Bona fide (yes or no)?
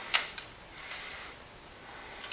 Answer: yes